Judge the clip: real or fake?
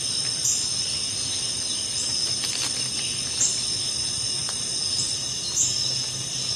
real